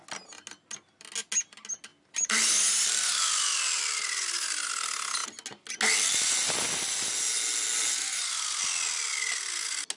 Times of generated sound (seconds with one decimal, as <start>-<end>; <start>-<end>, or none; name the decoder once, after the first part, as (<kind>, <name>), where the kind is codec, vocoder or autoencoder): 1.9-3.8 (vocoder, BigVGAN v2)